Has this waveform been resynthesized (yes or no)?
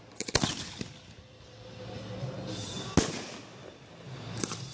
no